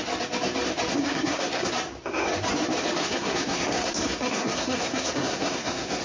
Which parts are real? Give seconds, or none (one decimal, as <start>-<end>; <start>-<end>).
0.0-0.9; 1.7-3.0